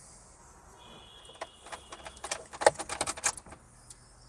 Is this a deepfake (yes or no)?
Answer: no